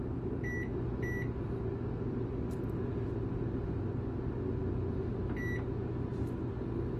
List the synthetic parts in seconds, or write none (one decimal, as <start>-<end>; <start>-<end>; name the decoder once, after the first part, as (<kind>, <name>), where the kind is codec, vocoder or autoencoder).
none